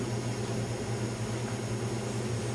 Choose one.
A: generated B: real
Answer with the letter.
B